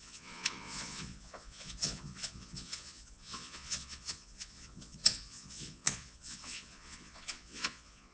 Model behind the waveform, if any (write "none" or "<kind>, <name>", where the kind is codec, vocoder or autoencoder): vocoder, Vocos